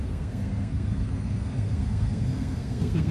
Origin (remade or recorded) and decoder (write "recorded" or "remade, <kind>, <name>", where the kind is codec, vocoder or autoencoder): remade, codec, SNAC